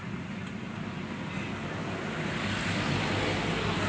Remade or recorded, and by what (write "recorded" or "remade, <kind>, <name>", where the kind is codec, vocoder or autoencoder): recorded